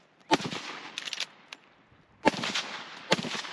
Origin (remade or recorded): recorded